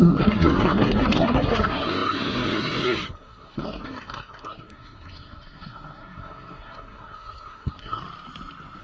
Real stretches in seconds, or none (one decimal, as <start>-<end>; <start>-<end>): 8.0-8.8